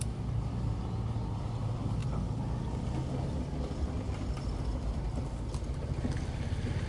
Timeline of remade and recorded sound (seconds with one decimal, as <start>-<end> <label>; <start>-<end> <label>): 0.0-6.9 recorded